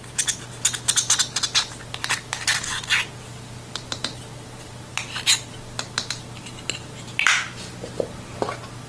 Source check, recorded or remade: recorded